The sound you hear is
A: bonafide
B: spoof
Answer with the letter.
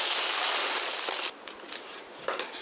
A